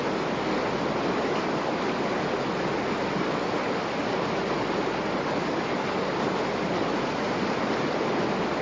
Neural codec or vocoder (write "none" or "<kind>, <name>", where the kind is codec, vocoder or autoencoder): none